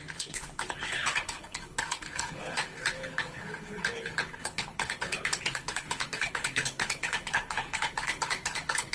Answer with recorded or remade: remade